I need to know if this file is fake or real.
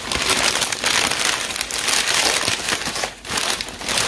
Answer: real